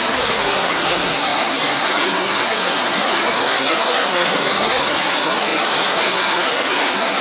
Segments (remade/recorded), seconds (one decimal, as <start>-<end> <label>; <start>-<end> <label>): 0.0-7.2 remade